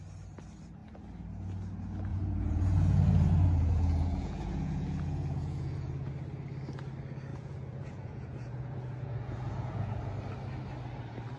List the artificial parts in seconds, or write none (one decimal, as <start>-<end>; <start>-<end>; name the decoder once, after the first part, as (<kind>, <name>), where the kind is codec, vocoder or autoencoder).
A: 2.1-6.1 (vocoder, Vocos); 7.3-10.0